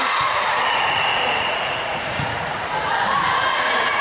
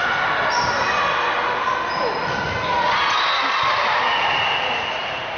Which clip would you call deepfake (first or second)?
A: first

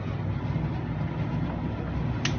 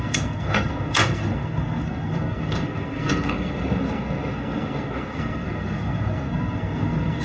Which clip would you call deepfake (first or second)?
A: second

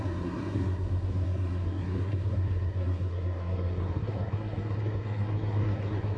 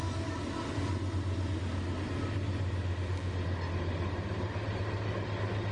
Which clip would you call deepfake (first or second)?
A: first